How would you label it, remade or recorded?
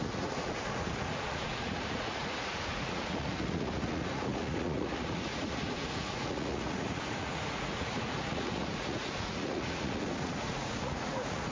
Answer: remade